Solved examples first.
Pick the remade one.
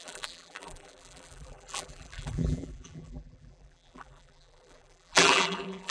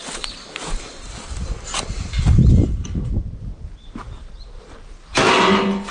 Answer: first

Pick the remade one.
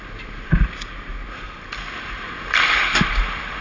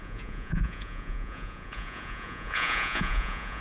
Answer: second